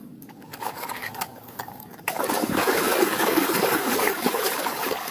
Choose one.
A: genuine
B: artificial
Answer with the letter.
B